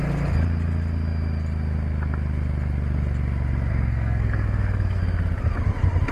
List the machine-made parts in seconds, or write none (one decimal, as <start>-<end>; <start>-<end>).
3.7-5.0